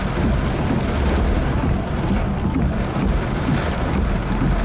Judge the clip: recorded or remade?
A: recorded